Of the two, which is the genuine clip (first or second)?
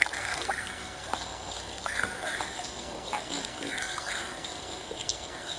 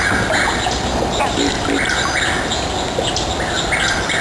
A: second